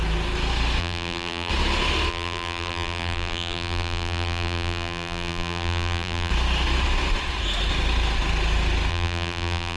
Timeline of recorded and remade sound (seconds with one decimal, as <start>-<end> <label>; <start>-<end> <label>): 0.0-0.8 recorded; 0.8-1.5 remade; 1.5-2.1 recorded; 2.1-6.3 remade; 6.3-8.9 recorded; 8.9-9.8 remade